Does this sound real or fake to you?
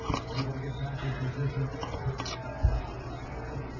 real